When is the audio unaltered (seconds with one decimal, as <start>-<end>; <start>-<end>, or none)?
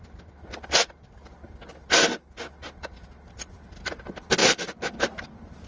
0.0-4.4